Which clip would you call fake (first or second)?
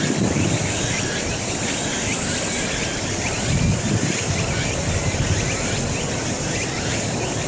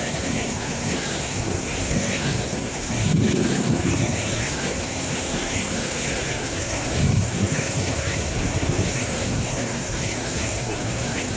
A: second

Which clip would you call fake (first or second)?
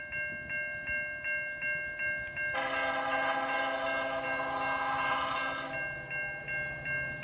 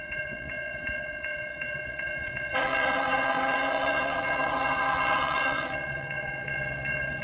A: second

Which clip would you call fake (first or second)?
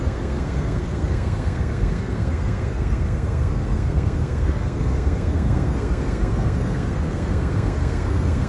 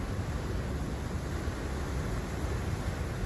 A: first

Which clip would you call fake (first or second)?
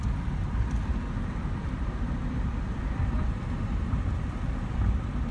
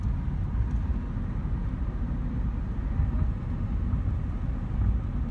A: first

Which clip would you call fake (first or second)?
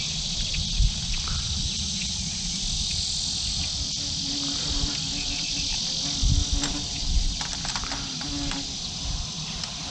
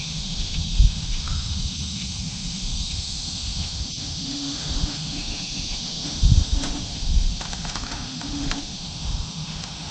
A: second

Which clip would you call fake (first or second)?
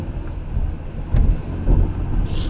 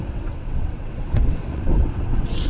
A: second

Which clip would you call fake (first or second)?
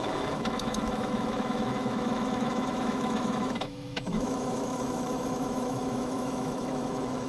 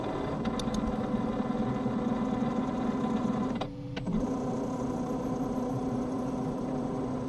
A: first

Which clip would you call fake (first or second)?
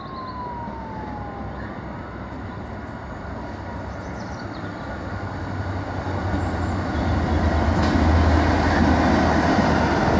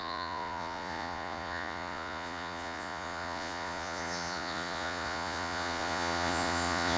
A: second